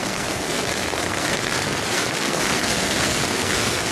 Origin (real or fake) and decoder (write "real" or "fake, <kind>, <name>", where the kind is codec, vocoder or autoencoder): fake, codec, SNAC